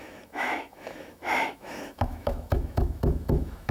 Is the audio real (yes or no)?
no